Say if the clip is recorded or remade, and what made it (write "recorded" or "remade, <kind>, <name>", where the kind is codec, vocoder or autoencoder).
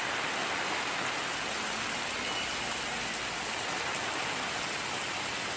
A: recorded